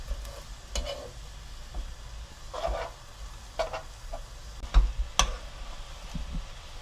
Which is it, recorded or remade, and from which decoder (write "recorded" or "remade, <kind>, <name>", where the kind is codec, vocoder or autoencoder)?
recorded